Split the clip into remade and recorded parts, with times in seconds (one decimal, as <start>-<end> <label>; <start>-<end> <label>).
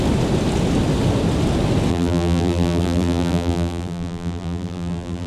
0.0-1.9 recorded; 1.9-5.3 remade